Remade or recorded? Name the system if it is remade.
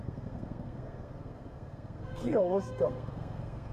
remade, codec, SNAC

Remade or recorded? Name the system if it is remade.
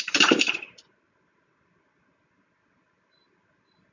recorded